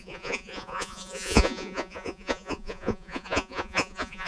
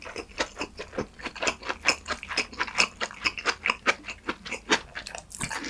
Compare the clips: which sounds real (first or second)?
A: second